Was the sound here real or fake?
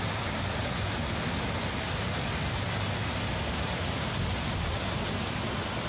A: real